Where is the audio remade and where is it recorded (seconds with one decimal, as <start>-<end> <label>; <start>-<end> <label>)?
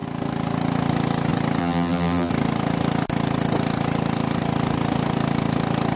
0.0-1.6 recorded; 1.6-2.3 remade; 2.3-6.0 recorded